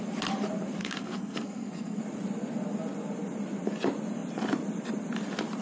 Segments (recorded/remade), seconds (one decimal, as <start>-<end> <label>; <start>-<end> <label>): 0.0-0.8 recorded; 0.8-2.0 remade; 2.0-5.6 recorded